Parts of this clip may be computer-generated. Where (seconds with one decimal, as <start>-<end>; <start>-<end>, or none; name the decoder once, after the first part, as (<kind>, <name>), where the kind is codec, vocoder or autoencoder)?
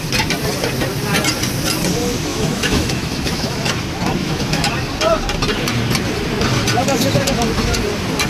2.3-3.7 (autoencoder, DAC-VAE); 4.2-4.7